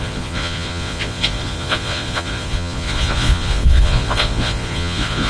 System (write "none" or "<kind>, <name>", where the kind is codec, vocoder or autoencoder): vocoder, Vocos